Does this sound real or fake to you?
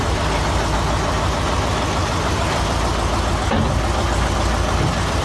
real